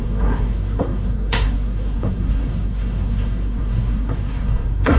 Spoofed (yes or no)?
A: yes